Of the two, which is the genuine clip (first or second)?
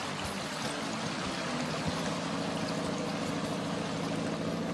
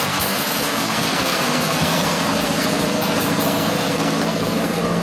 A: first